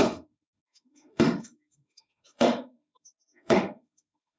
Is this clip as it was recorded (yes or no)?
no